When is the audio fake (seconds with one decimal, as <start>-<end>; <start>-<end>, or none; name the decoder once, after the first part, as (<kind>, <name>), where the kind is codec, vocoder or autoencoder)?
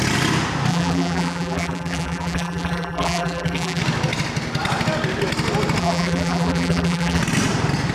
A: 0.7-3.8 (vocoder, BigVGAN v2); 5.8-7.2